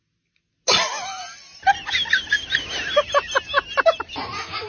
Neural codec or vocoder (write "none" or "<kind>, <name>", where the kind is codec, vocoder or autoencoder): none